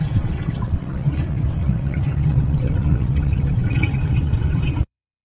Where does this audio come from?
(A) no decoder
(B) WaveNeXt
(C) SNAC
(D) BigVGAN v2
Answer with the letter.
B